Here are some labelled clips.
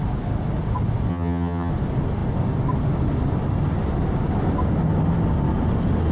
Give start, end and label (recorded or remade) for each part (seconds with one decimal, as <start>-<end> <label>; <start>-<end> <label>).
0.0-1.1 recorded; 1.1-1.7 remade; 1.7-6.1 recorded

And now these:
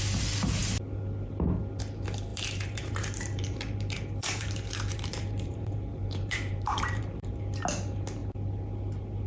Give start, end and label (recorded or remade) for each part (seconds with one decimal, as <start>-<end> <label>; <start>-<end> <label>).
0.0-2.3 recorded; 2.3-7.4 remade; 7.4-9.3 recorded

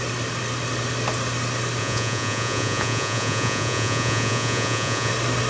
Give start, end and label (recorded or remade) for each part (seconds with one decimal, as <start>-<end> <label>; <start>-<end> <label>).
0.0-1.8 recorded; 1.8-5.1 remade; 5.1-5.5 recorded

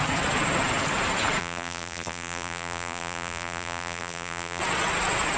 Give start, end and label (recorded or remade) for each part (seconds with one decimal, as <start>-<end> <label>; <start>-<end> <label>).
0.0-1.4 recorded; 1.4-4.6 remade; 4.6-5.4 recorded

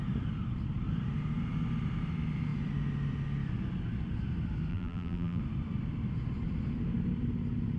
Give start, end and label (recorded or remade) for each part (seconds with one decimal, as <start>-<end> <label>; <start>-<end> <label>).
0.0-4.7 recorded; 4.7-5.4 remade; 5.4-7.8 recorded

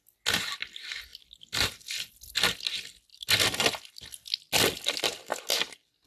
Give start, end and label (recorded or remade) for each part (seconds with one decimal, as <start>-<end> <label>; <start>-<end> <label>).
0.0-6.1 recorded

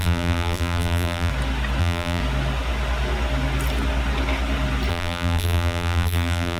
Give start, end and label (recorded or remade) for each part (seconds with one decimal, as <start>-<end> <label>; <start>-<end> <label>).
0.0-1.3 remade; 1.3-1.8 recorded; 1.8-2.2 remade; 2.2-4.9 recorded; 4.9-6.6 remade

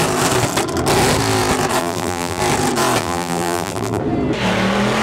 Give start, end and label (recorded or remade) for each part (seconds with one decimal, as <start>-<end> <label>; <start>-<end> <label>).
0.0-1.8 recorded; 1.8-2.4 remade; 2.4-3.0 recorded; 3.0-4.0 remade; 4.0-5.0 recorded